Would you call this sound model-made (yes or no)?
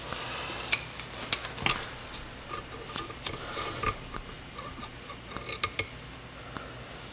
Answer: no